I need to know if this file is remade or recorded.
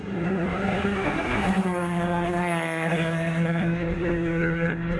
remade